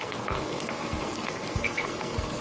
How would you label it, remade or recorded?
remade